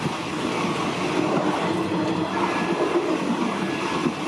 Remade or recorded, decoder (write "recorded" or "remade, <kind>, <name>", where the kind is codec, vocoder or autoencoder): recorded